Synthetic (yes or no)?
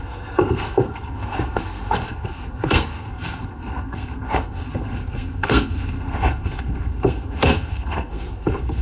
yes